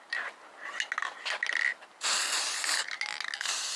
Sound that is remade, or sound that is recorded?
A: recorded